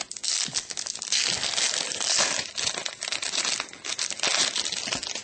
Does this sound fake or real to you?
real